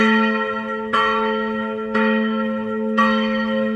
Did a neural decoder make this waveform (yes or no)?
yes